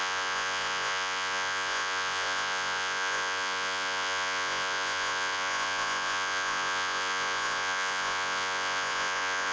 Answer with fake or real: fake